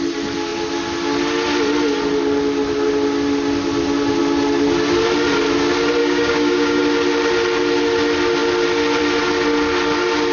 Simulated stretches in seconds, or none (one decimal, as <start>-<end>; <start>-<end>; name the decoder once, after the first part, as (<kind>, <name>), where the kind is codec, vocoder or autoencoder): 6.0-6.8 (codec, DAC)